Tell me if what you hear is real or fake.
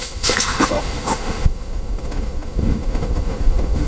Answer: fake